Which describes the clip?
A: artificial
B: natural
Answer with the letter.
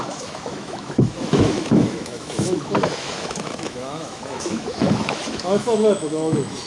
A